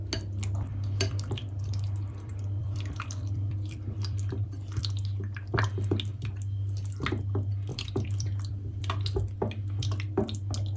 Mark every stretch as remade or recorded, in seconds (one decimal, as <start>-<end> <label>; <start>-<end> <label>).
0.0-0.7 recorded; 0.7-4.8 remade; 4.8-7.7 recorded; 7.7-8.9 remade; 8.9-10.8 recorded